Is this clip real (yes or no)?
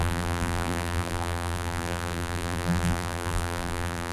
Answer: no